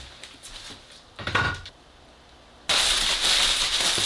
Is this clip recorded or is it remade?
recorded